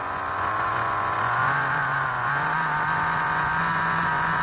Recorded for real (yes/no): no